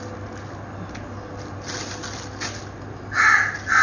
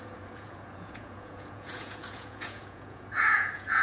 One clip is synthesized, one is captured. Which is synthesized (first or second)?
second